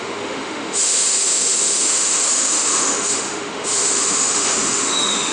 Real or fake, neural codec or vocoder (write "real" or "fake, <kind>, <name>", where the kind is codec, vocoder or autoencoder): fake, autoencoder, DAC-VAE